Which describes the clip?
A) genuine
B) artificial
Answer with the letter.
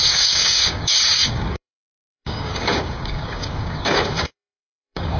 B